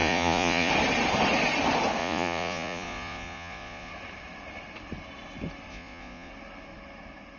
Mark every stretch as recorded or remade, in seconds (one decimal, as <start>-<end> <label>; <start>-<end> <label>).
0.0-0.7 remade; 0.7-2.0 recorded; 2.0-3.9 remade; 3.9-5.7 recorded; 5.7-6.3 remade; 6.3-7.4 recorded